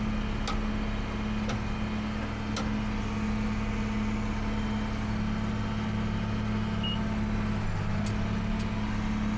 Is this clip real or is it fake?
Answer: real